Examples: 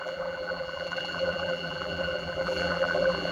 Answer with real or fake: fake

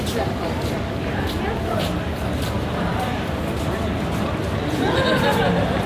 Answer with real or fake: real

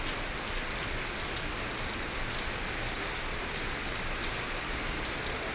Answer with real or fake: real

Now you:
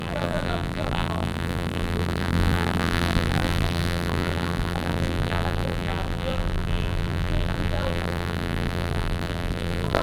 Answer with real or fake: fake